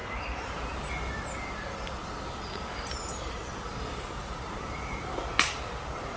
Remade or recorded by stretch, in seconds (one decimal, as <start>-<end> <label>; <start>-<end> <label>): 0.0-0.9 remade; 0.9-2.0 recorded; 2.0-5.0 remade; 5.0-6.2 recorded